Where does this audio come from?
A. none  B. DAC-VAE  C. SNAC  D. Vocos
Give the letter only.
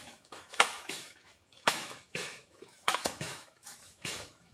B